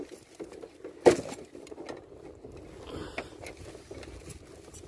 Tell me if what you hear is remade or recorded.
recorded